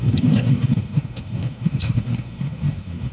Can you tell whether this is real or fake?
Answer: fake